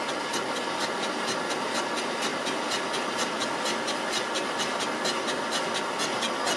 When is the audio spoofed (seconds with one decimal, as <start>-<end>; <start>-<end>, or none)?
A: 2.3-4.6